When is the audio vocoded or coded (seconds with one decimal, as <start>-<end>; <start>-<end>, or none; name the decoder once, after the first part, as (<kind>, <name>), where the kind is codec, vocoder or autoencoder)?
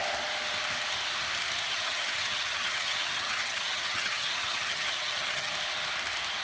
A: 1.7-5.5 (vocoder, HiFi-GAN)